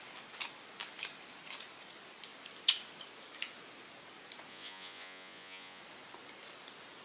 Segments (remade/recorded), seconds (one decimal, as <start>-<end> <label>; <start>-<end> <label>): 0.0-4.5 recorded; 4.5-5.8 remade; 5.8-7.0 recorded